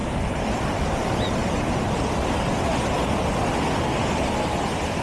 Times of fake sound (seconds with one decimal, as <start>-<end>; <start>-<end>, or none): none